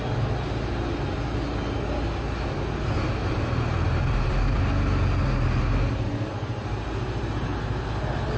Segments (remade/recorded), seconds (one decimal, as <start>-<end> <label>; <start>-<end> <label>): 0.0-3.2 recorded; 3.2-4.6 remade; 4.6-8.4 recorded